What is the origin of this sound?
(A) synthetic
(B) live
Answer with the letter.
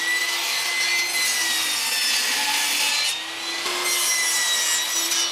B